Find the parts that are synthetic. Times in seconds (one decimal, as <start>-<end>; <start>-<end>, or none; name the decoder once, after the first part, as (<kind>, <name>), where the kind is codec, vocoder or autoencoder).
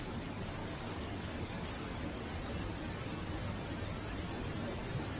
0.6-1.5 (codec, DAC)